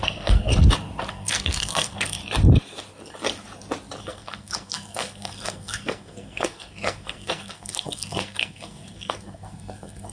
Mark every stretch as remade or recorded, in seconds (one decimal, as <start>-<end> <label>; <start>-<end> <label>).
0.0-0.5 remade; 0.5-1.1 recorded; 1.1-2.2 remade; 2.2-4.0 recorded; 4.0-10.1 remade